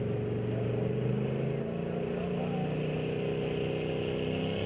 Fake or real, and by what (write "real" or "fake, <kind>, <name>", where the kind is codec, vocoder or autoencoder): real